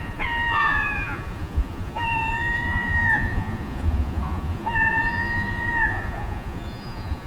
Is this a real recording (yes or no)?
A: no